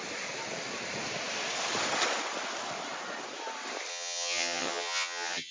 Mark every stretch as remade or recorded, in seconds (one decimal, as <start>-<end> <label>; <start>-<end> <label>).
0.0-3.9 recorded; 3.9-5.5 remade